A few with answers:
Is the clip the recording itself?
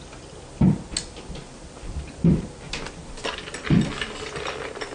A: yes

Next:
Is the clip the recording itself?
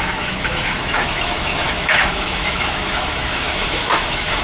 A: no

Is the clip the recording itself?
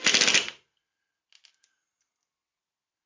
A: yes